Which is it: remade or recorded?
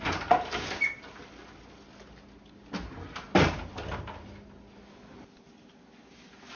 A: recorded